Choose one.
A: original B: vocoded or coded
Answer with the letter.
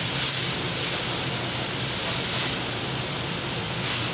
A